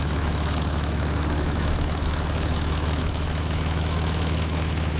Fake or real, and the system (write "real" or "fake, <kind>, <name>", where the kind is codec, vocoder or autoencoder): fake, autoencoder, DAC-VAE